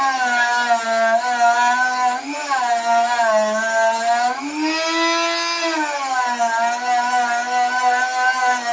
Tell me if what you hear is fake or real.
real